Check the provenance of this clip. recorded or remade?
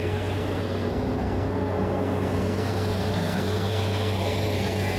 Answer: remade